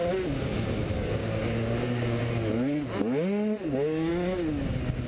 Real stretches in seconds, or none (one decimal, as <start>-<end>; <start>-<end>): 0.0-1.2; 2.2-5.1